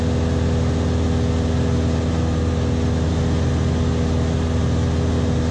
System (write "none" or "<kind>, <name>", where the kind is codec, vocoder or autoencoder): none